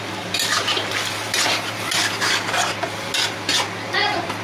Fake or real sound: real